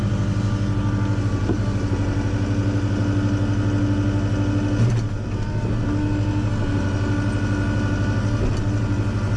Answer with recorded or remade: recorded